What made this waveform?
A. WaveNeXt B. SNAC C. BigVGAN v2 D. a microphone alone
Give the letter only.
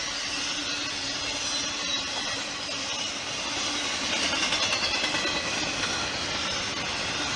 D